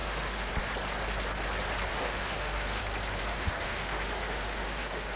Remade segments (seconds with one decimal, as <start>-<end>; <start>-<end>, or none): 0.0-0.5; 1.9-2.8; 3.2-5.2

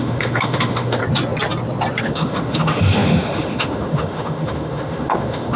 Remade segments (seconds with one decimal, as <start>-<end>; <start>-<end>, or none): 0.0-1.0; 2.0-5.6

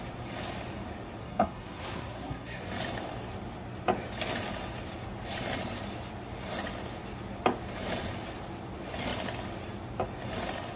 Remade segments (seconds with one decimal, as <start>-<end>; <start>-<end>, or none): 1.2-2.6

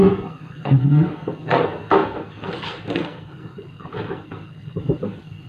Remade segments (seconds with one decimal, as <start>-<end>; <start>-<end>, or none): 0.0-5.5

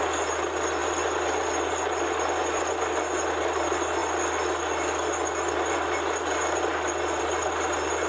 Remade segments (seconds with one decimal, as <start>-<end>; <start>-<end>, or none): none

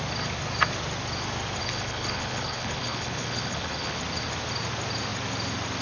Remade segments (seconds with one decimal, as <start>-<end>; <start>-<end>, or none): 1.6-4.0

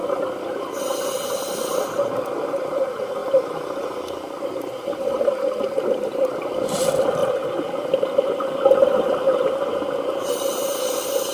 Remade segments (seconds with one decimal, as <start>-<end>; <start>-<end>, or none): none

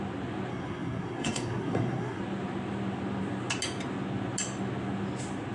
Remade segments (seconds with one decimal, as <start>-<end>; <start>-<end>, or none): 0.5-2.2